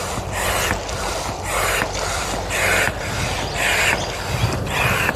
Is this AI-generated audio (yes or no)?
no